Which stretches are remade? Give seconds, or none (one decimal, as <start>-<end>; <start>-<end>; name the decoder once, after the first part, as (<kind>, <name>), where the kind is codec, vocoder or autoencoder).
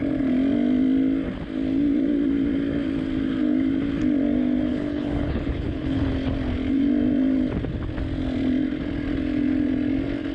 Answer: 4.7-6.0 (codec, HILCodec)